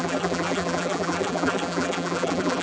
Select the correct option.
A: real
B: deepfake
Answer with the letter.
B